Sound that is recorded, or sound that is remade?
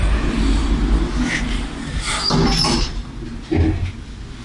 recorded